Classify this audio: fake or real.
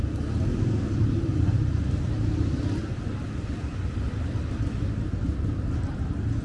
real